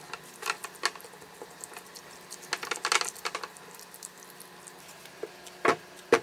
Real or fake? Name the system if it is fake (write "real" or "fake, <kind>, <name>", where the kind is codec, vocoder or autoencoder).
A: real